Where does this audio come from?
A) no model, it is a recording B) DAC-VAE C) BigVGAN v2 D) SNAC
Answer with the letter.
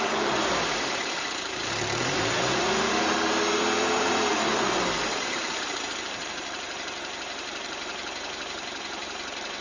C